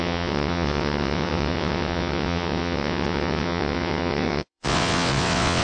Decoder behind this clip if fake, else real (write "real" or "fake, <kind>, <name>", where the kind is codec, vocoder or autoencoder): fake, vocoder, WaveNeXt